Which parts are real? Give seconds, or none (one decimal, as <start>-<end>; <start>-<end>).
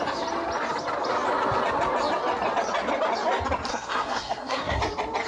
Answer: 0.0-3.7; 4.8-5.3